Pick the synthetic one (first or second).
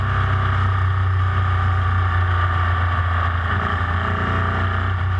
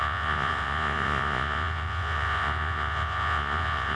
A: second